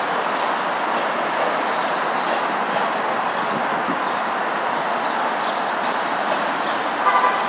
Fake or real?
real